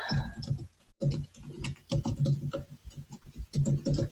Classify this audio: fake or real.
fake